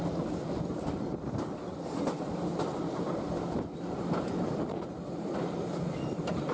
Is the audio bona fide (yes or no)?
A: yes